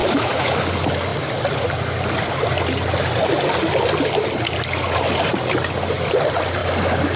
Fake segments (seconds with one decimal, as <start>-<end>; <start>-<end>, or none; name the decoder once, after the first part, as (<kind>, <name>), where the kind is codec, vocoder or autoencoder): 0.0-0.6 (autoencoder, DAC-VAE)